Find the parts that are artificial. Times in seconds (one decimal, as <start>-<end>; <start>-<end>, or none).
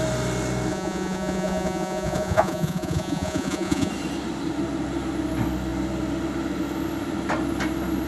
0.7-3.9